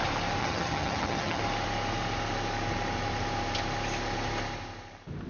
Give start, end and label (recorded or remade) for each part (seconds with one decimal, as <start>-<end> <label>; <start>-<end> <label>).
0.0-0.4 recorded; 0.4-1.4 remade; 1.4-5.3 recorded